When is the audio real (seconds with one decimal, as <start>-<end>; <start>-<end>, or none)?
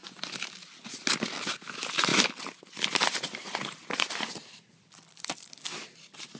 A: 0.0-2.1; 5.5-6.4